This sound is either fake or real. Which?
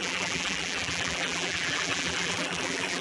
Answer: fake